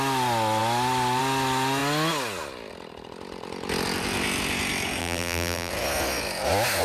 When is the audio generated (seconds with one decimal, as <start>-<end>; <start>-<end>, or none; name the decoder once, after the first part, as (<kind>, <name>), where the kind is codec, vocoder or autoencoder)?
5.0-5.7 (vocoder, BigVGAN v2)

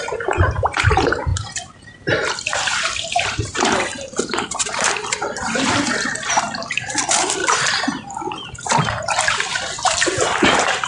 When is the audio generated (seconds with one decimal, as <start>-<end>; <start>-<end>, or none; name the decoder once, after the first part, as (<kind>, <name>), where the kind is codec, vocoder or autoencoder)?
0.0-7.4 (vocoder, BigVGAN v2); 8.6-10.9

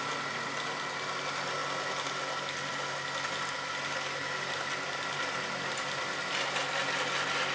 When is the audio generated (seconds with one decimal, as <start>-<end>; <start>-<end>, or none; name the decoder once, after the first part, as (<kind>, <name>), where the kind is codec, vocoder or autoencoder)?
none

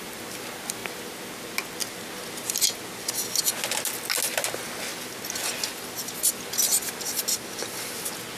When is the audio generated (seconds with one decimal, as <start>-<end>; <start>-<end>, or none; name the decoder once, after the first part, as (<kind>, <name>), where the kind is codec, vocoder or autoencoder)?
none